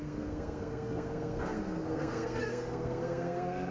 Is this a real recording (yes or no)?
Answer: no